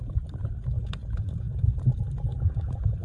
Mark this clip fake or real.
fake